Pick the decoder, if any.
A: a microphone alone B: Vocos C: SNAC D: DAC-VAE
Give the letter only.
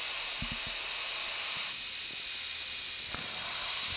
A